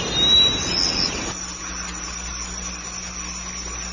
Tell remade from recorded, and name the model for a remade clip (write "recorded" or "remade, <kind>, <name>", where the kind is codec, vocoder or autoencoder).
recorded